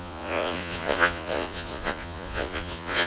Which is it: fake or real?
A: fake